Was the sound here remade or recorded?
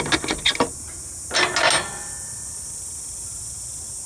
recorded